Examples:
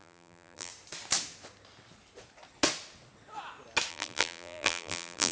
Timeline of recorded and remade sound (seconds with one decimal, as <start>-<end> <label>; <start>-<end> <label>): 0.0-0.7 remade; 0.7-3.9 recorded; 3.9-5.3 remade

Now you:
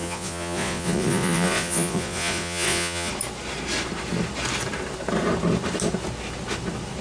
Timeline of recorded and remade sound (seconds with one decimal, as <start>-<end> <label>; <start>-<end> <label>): 0.0-3.1 remade; 3.1-7.0 recorded

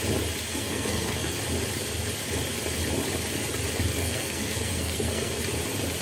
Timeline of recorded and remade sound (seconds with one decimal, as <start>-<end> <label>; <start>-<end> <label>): 0.0-0.5 recorded; 0.5-1.4 remade; 1.4-4.0 recorded; 4.0-5.4 remade; 5.4-6.0 recorded